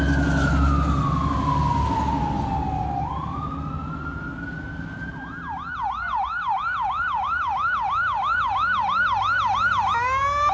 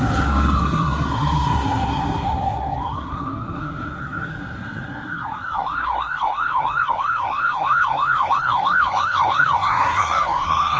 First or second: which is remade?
second